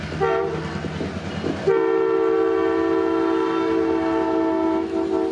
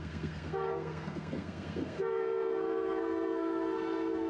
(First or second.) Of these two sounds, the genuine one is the first